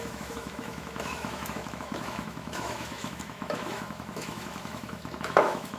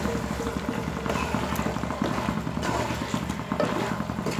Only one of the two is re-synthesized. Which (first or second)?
first